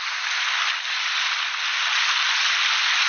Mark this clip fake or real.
real